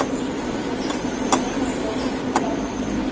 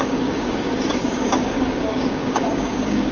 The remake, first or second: second